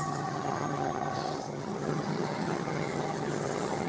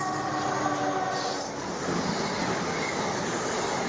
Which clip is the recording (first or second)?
second